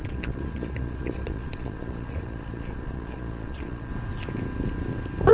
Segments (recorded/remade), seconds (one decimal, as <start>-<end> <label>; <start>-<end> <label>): 0.0-3.9 remade; 3.9-5.3 recorded